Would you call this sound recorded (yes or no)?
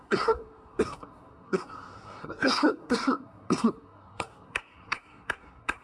no